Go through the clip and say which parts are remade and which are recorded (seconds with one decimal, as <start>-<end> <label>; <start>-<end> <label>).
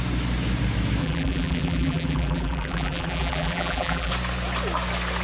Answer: 0.0-1.0 recorded; 1.0-4.1 remade; 4.1-5.2 recorded